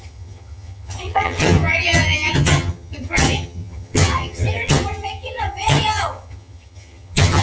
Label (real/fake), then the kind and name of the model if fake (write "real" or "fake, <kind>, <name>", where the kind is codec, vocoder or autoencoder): fake, vocoder, HiFi-GAN